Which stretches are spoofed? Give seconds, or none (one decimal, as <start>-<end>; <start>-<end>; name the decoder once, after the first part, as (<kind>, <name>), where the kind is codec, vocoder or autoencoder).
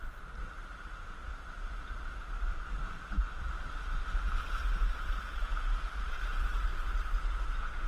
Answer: 0.0-1.3 (vocoder, BigVGAN v2); 6.0-6.7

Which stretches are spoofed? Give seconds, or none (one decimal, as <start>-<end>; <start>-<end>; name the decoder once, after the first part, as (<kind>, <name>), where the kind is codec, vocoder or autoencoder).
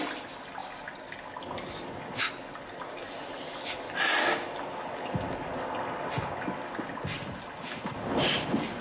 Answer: none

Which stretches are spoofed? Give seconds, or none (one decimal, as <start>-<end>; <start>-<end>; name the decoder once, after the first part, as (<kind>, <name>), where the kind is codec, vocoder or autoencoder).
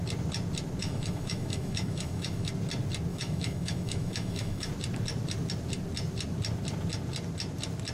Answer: 0.8-2.5 (autoencoder, DAC-VAE); 3.1-4.7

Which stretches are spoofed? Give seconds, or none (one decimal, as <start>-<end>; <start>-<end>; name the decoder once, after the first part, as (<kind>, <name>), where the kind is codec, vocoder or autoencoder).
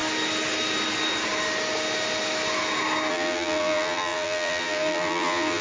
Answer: 3.1-5.6 (vocoder, BigVGAN v2)